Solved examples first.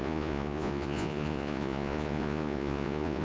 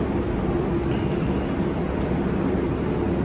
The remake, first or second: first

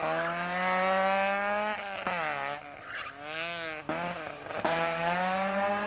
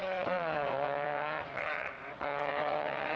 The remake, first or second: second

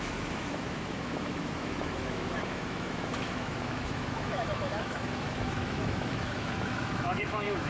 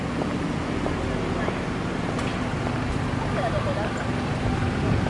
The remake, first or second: first